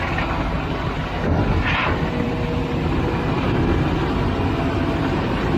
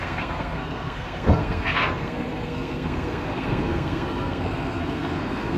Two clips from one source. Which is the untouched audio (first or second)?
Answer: first